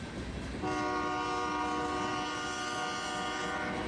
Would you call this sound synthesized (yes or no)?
no